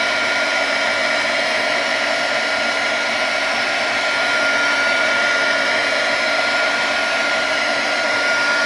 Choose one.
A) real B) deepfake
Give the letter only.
B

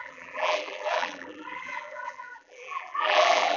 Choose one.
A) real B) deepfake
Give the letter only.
B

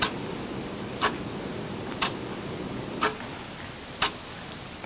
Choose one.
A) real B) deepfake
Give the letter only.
B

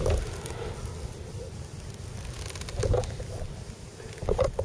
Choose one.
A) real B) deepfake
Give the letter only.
A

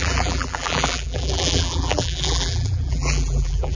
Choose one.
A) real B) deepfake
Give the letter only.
B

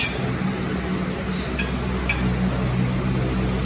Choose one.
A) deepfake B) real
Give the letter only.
B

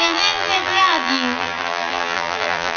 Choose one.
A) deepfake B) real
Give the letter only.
A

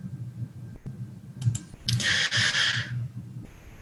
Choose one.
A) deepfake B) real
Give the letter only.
B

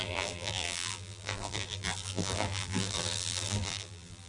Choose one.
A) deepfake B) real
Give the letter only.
A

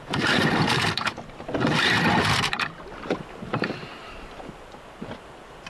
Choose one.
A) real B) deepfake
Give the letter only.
B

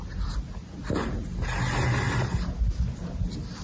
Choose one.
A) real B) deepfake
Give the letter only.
A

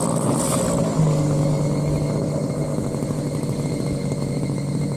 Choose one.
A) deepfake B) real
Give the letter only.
B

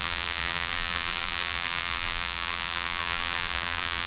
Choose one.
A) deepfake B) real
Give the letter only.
A